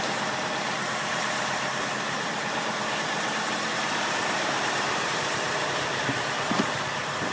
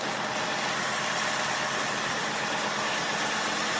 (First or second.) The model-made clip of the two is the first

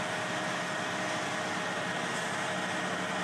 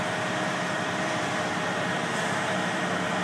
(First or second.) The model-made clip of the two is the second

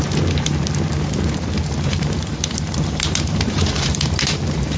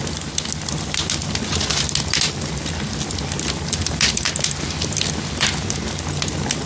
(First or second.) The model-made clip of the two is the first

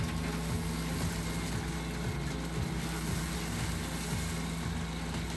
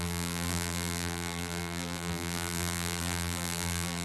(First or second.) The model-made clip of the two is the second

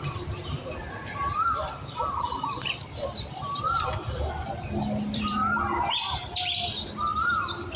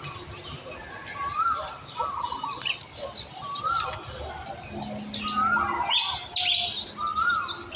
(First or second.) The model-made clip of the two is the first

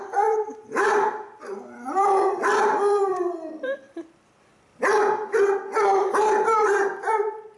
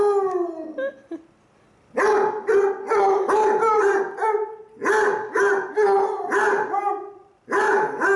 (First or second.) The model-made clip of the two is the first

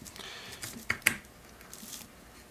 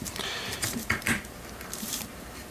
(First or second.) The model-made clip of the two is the second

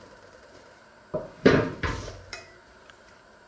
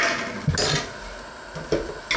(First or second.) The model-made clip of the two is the first